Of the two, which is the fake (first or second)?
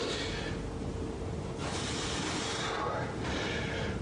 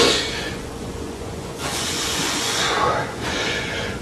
second